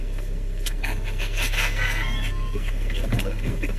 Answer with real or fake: fake